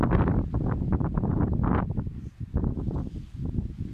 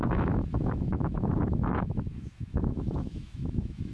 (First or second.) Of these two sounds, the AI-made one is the second